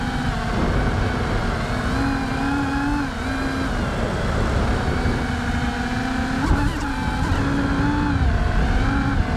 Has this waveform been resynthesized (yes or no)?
no